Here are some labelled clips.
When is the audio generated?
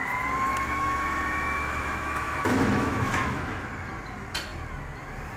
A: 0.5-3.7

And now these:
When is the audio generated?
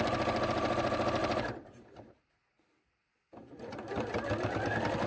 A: 1.2-2.3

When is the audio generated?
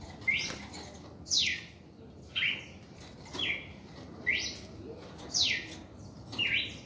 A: none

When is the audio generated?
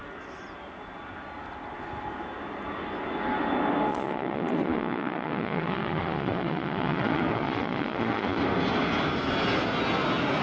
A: 3.9-8.4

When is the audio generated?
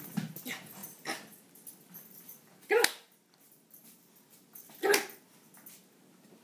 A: none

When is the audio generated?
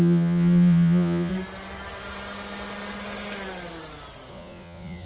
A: 0.0-1.3; 4.3-5.0